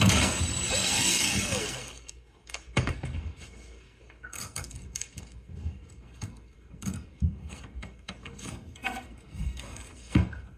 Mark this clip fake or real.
fake